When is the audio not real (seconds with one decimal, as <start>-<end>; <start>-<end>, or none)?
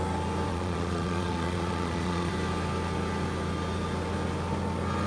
0.5-2.3